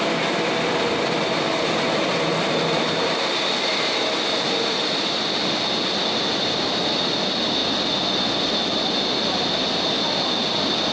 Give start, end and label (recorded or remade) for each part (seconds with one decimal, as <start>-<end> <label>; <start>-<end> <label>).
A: 0.0-10.9 recorded